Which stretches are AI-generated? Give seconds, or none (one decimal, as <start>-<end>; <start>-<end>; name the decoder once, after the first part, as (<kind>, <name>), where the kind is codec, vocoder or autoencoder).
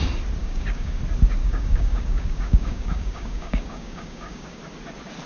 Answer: 0.4-1.0 (codec, DAC); 1.4-4.6